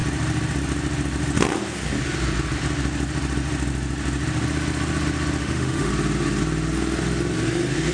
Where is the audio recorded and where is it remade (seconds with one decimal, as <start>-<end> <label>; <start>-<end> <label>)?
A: 0.0-5.4 recorded; 5.4-5.9 remade; 5.9-7.9 recorded